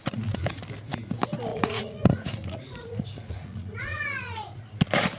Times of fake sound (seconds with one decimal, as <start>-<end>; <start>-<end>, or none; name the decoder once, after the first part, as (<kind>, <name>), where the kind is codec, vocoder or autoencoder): 0.0-0.6 (vocoder, Vocos); 1.5-4.6